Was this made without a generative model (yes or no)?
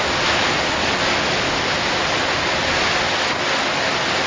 yes